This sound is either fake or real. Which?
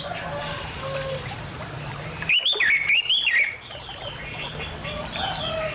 real